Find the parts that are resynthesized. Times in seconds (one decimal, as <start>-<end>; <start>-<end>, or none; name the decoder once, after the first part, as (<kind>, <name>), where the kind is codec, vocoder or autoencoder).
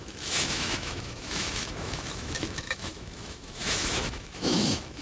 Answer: 0.0-5.0 (autoencoder, DAC-VAE)